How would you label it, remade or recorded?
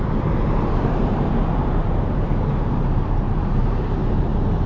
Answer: remade